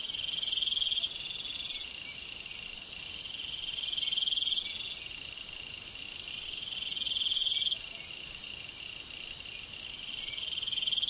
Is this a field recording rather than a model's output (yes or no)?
yes